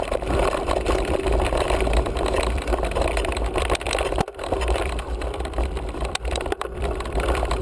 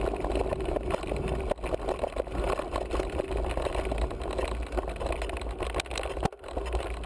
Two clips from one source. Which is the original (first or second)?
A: second